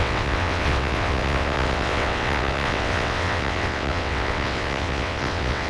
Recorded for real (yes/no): no